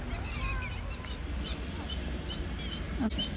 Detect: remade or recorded recorded